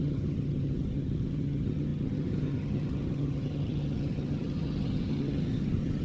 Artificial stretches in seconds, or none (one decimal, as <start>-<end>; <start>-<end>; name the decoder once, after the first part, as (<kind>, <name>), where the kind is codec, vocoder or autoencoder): 0.0-6.0 (vocoder, HiFi-GAN)